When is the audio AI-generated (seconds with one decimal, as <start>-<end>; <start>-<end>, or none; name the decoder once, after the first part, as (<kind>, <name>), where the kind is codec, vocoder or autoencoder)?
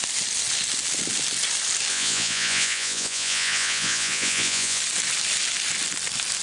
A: 1.9-4.8 (vocoder, Vocos)